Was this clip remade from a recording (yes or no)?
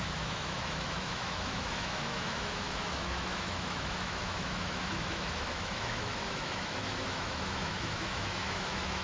yes